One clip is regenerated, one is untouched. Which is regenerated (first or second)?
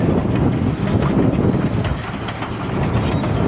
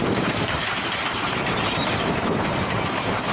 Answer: second